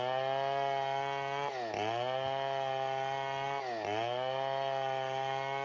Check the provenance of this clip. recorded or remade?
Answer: recorded